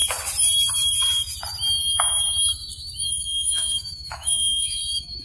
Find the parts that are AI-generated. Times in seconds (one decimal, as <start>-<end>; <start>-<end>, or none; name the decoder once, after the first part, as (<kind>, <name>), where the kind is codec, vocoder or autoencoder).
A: 3.1-5.2 (autoencoder, DAC-VAE)